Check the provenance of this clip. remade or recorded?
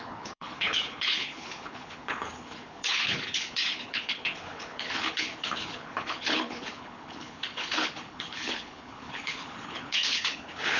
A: remade